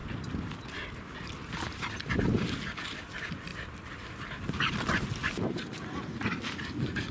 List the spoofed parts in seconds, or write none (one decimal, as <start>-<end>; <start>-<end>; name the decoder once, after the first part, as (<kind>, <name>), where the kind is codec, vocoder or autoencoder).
none